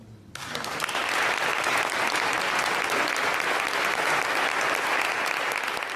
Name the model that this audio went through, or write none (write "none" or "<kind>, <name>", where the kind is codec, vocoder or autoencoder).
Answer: none